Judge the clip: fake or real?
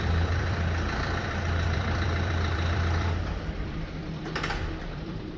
fake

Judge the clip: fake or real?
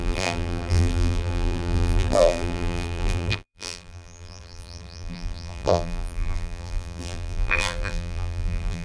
fake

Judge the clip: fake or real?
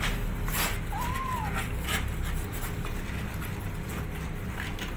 real